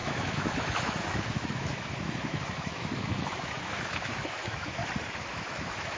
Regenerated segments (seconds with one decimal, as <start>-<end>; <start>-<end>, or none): 0.0-4.8; 5.3-6.0